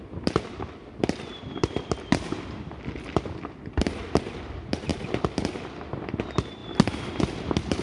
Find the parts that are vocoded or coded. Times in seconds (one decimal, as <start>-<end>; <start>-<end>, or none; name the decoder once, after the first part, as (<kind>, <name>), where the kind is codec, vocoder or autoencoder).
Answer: 0.0-4.9 (vocoder, BigVGAN v2); 5.6-6.6; 7.2-7.8